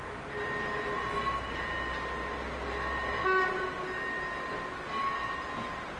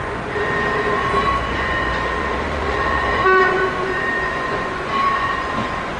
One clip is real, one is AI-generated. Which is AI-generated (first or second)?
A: second